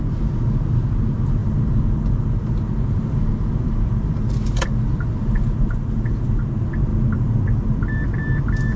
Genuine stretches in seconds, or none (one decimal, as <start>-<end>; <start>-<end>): 0.0-1.4; 6.4-6.9; 7.9-8.8